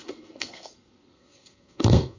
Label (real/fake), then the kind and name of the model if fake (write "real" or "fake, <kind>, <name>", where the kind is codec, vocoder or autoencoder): fake, codec, SNAC